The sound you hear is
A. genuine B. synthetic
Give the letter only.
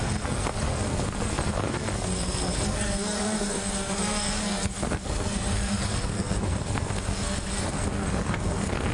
B